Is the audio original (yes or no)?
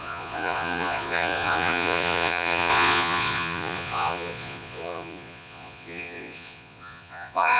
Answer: no